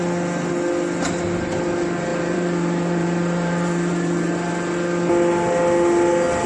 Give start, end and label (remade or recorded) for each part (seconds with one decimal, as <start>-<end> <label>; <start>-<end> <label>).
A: 0.0-2.1 recorded; 2.1-4.5 remade; 4.5-6.5 recorded